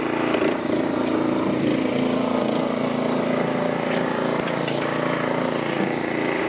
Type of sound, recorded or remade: recorded